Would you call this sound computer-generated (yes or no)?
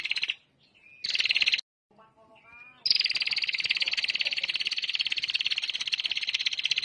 no